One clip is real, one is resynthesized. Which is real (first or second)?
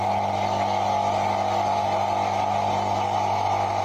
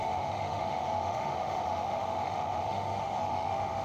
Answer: first